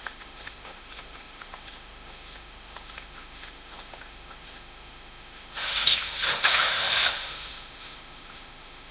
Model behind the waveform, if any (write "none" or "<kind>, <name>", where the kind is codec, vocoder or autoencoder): autoencoder, DAC-VAE